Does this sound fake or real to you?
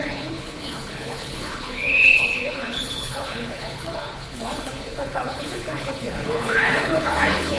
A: fake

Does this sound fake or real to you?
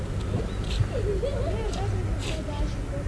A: real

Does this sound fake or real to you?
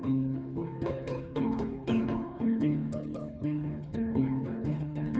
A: fake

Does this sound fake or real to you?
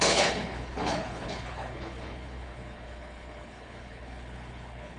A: fake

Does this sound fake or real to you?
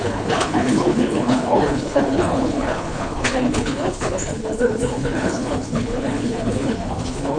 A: fake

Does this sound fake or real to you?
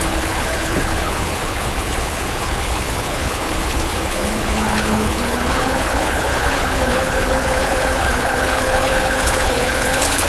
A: fake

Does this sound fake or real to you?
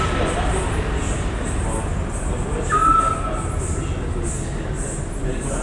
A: real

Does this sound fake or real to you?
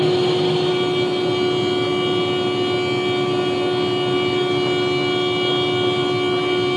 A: real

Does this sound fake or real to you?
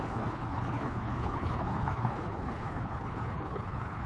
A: fake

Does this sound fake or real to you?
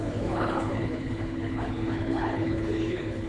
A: fake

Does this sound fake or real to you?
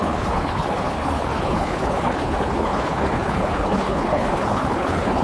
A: fake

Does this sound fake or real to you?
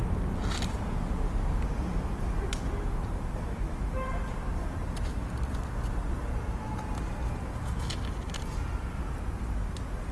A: real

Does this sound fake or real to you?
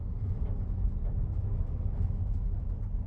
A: real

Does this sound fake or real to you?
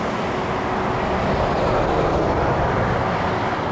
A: real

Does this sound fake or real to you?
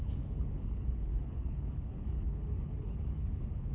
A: fake